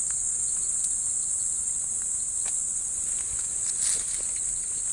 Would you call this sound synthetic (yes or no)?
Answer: no